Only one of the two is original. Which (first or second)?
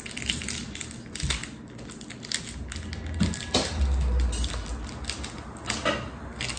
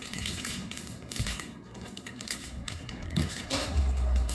first